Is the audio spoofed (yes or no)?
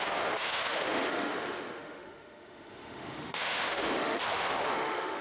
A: yes